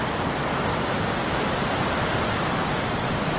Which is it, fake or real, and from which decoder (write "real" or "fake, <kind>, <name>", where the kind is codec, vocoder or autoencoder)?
real